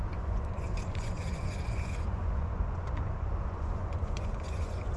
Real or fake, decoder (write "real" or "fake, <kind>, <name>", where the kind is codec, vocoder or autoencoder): fake, vocoder, Vocos